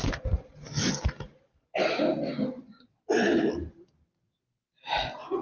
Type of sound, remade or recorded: recorded